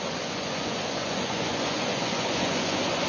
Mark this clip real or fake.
fake